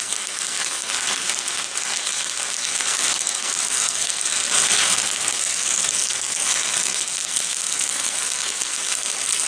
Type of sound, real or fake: fake